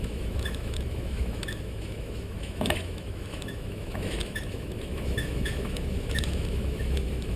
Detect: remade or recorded remade